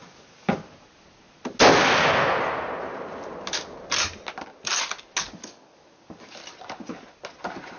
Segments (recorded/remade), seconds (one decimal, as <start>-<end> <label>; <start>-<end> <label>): 0.0-0.6 remade; 0.6-5.2 recorded; 5.2-6.4 remade; 6.4-7.8 recorded

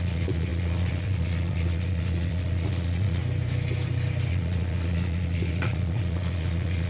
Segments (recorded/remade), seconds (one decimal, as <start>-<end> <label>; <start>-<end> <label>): 0.0-3.2 remade; 3.2-4.3 recorded; 4.3-6.9 remade